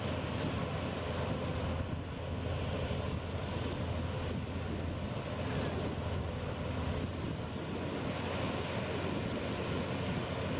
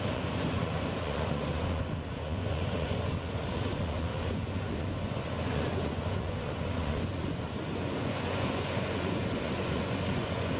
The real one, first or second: first